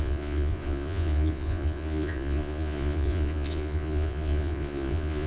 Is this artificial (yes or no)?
yes